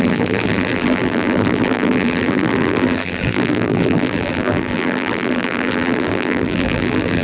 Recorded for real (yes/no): no